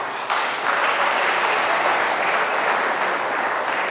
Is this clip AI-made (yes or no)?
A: no